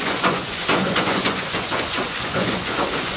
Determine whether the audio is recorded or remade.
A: remade